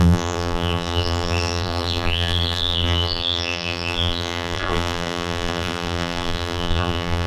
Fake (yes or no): yes